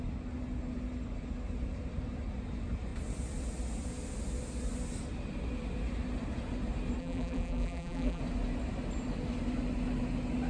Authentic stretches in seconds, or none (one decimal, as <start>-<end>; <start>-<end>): 0.0-7.0; 8.2-10.5